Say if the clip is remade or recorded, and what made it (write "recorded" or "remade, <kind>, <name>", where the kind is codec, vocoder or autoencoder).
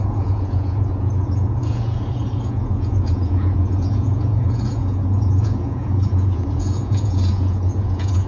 remade, vocoder, Vocos